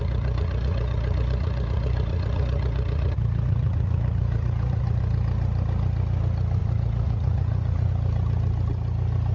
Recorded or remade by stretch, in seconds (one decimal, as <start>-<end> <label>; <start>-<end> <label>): 0.0-5.0 remade; 5.0-6.6 recorded; 6.6-7.9 remade; 7.9-9.3 recorded